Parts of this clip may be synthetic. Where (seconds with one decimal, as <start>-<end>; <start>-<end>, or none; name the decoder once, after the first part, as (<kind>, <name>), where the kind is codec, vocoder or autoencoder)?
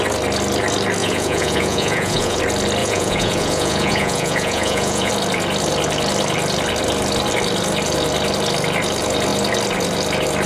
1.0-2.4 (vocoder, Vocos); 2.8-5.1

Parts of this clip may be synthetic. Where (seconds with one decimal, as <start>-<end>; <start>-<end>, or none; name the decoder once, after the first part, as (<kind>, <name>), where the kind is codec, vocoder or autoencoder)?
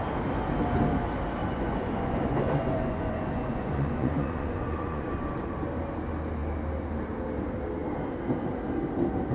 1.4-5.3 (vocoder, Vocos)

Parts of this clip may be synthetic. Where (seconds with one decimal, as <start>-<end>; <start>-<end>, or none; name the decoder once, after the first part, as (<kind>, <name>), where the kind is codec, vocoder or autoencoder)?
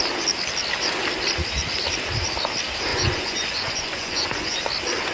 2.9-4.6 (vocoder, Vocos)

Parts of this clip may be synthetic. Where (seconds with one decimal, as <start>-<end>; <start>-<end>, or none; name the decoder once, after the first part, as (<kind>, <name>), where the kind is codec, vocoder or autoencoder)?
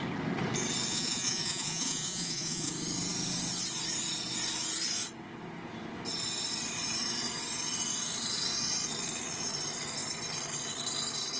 0.9-2.7 (vocoder, Vocos)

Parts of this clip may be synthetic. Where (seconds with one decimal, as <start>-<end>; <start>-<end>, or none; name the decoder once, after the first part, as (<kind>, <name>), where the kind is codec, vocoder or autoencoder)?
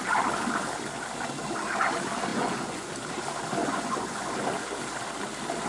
2.3-2.9 (vocoder, Vocos); 3.6-4.3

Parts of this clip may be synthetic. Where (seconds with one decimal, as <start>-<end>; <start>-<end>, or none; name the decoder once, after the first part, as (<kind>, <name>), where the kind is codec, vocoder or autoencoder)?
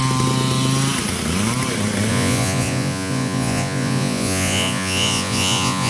2.1-5.9 (vocoder, Vocos)